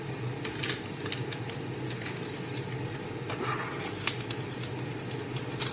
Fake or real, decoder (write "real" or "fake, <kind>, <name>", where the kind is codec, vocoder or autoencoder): real